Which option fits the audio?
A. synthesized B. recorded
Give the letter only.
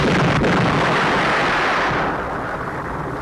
B